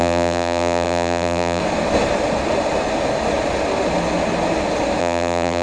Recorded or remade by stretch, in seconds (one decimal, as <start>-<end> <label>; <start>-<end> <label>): 0.0-1.6 remade; 1.6-5.0 recorded; 5.0-5.6 remade